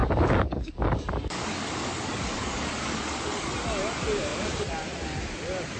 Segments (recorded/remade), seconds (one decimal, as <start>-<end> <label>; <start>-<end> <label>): 0.0-3.5 remade; 3.5-5.8 recorded